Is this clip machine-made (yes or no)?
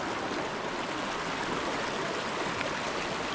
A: no